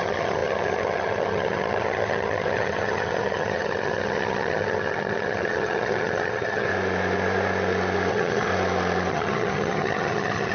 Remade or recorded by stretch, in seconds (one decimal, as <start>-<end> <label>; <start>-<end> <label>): 0.0-6.7 remade; 6.7-8.1 recorded; 8.1-8.5 remade; 8.5-9.1 recorded; 9.1-10.5 remade